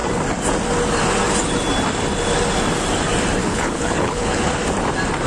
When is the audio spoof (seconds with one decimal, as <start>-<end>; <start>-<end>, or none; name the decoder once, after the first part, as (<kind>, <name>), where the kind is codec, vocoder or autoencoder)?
3.4-4.5 (codec, HILCodec)